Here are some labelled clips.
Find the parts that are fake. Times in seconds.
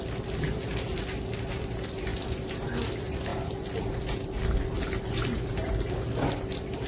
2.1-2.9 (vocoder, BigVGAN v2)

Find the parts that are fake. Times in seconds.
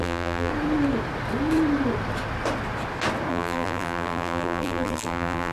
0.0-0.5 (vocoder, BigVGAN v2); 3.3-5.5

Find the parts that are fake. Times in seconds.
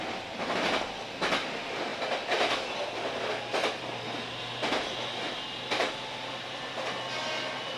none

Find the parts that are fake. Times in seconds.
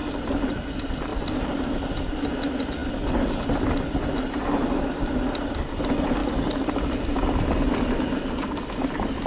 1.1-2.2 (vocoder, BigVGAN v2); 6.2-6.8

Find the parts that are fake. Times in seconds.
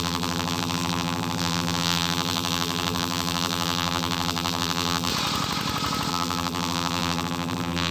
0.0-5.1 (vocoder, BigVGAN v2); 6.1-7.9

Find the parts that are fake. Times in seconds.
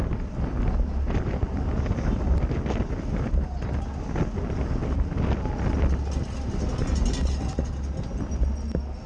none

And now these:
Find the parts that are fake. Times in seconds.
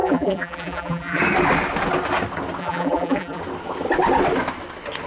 0.0-1.2 (vocoder, BigVGAN v2); 2.6-3.4